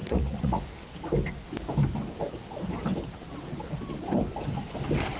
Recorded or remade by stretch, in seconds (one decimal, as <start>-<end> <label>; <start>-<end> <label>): 0.0-0.6 remade; 0.6-5.2 recorded